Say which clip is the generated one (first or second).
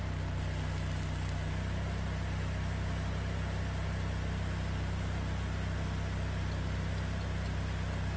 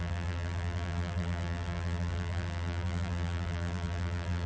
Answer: second